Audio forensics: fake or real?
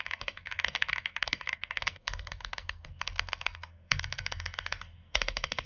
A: fake